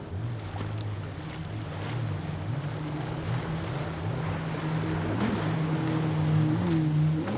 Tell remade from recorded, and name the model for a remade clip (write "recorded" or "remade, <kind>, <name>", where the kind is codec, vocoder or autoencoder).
recorded